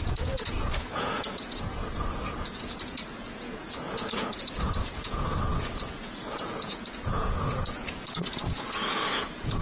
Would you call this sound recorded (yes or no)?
no